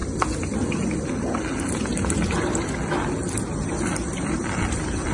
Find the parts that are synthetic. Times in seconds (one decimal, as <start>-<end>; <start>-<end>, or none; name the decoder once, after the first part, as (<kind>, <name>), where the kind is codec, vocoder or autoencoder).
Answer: none

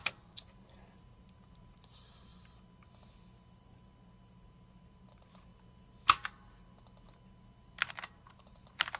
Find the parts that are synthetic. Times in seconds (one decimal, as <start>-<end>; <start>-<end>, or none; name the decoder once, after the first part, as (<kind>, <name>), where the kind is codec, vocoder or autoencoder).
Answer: 0.0-2.3 (vocoder, BigVGAN v2); 4.3-5.5; 7.9-9.0